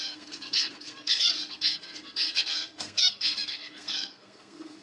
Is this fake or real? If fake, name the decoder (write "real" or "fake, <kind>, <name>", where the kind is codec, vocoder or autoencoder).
fake, codec, SNAC